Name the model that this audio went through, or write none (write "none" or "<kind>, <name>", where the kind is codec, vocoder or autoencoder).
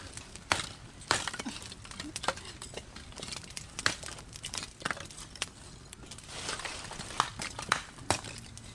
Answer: none